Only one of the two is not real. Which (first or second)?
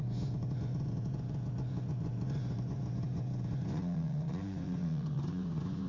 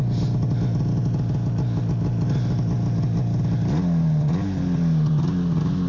first